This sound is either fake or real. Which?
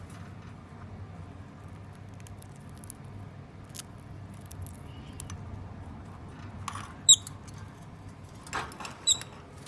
real